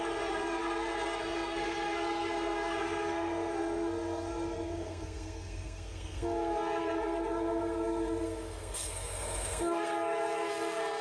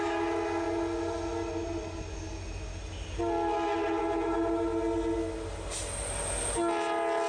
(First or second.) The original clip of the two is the second